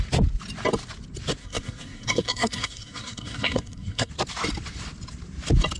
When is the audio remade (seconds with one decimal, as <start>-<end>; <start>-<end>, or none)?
1.4-4.1